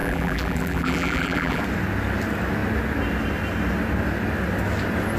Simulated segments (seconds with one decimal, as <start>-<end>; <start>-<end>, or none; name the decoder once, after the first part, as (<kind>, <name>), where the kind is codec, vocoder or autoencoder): 0.0-1.6 (vocoder, BigVGAN v2)